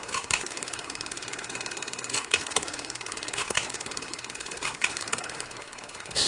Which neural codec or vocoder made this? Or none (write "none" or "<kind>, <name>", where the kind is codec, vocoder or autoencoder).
codec, SNAC